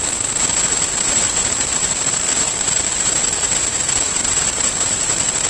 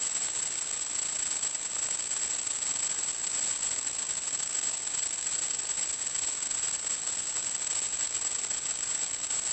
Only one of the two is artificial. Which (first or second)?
first